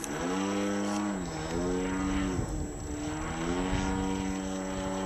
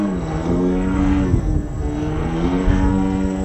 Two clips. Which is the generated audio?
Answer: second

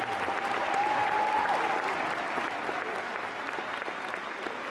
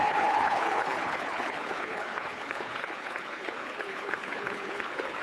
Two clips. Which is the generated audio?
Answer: second